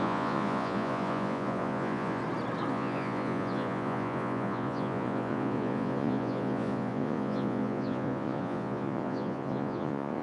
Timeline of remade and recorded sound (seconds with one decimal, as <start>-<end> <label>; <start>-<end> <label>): 0.0-2.2 remade; 2.2-2.7 recorded; 2.7-10.2 remade